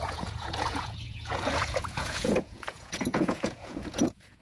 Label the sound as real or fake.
fake